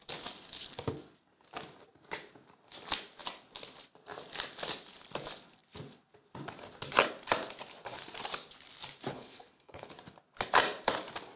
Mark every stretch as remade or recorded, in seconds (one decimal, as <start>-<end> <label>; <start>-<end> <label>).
0.0-9.1 recorded; 9.1-9.9 remade; 9.9-11.4 recorded